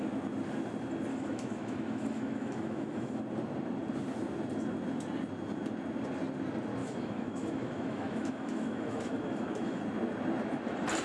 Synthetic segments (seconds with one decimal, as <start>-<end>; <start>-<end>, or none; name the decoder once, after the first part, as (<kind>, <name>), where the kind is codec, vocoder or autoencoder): 1.1-3.2 (autoencoder, DAC-VAE); 6.8-9.8